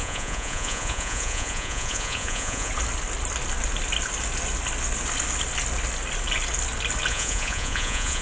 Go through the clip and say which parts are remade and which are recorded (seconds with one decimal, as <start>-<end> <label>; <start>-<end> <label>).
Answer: 0.0-2.7 remade; 2.7-7.1 recorded; 7.1-8.2 remade